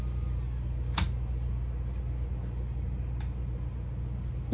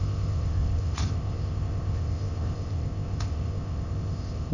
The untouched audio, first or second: first